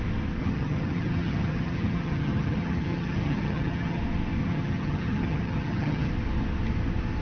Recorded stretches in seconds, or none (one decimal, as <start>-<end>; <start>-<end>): 0.0-0.4; 4.0-4.4; 6.1-7.2